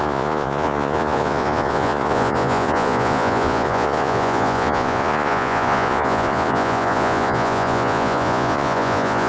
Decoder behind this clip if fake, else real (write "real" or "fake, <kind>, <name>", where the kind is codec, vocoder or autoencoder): fake, vocoder, Vocos